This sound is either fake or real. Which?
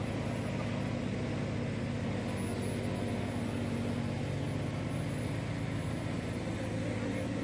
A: real